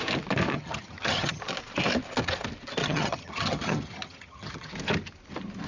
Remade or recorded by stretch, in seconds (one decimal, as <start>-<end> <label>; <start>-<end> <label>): 0.0-0.5 recorded; 0.5-1.4 remade; 1.4-2.8 recorded; 2.8-4.7 remade; 4.7-5.7 recorded